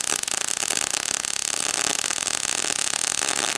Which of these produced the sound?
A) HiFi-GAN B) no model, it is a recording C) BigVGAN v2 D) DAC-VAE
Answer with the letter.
B